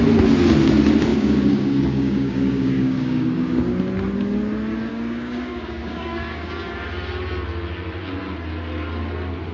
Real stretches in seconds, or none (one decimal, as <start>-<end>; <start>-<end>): 0.0-1.1; 3.7-4.9; 6.5-9.5